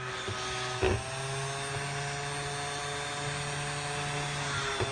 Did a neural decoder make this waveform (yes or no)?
no